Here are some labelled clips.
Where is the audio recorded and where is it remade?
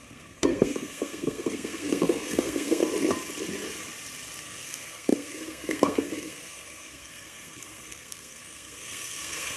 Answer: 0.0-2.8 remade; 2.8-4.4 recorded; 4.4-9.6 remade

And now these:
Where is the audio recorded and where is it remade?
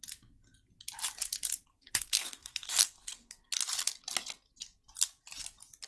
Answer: 0.0-1.7 recorded; 1.7-3.5 remade; 3.5-5.9 recorded